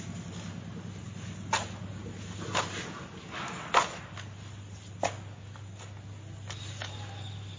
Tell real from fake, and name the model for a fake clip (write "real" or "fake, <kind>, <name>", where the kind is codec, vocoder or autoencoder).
real